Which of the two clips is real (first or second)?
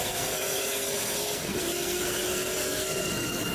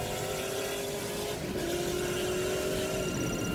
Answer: second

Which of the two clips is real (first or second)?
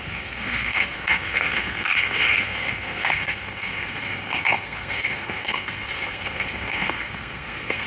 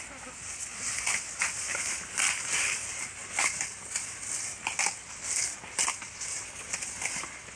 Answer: second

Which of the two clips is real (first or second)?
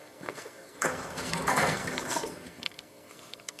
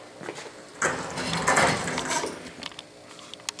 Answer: second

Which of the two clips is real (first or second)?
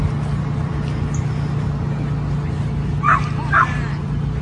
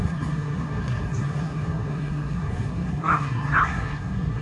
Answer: first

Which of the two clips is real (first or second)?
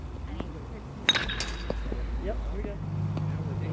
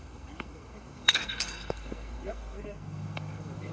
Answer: first